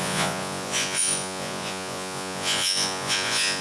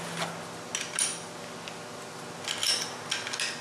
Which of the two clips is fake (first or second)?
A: first